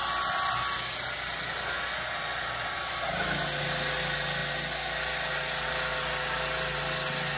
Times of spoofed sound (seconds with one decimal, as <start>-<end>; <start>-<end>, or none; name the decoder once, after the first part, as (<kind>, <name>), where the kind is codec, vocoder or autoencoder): 0.0-0.5 (vocoder, BigVGAN v2)